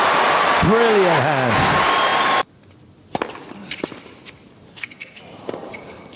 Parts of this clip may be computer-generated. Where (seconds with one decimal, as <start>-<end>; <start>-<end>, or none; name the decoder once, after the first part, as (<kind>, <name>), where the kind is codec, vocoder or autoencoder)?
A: 4.7-5.2 (codec, SNAC)